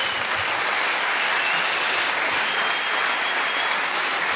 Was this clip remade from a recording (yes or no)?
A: yes